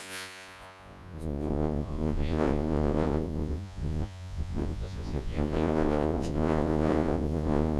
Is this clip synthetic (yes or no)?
yes